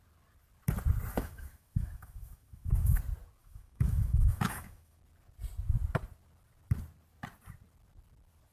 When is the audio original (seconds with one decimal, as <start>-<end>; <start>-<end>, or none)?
0.0-1.1; 3.0-3.4; 5.0-8.5